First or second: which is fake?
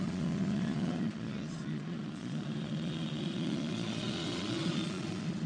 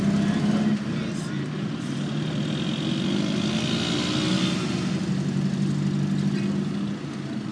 first